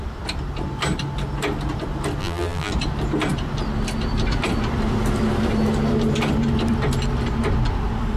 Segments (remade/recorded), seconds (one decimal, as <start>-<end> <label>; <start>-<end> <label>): 0.0-2.2 recorded; 2.2-2.7 remade; 2.7-8.2 recorded